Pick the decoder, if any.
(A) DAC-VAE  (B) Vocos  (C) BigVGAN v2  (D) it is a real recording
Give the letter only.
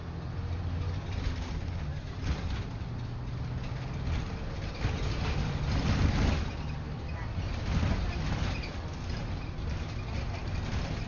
D